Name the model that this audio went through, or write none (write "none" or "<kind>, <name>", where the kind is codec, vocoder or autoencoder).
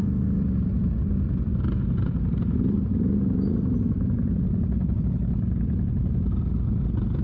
none